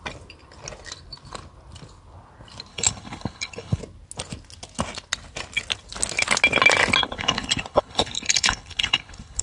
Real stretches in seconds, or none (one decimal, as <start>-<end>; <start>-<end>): 0.0-2.7; 3.8-7.0